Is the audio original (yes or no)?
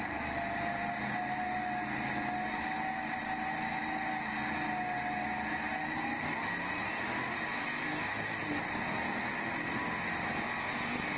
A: yes